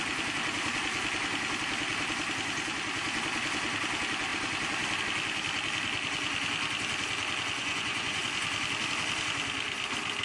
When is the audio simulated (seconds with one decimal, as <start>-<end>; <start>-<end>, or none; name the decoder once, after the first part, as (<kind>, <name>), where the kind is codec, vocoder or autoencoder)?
7.6-8.2 (vocoder, Vocos)